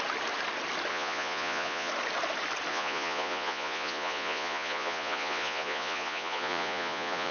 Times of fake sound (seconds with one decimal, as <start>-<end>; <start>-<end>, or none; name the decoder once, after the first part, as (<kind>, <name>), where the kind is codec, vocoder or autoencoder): 0.9-1.9 (vocoder, Vocos); 2.7-7.3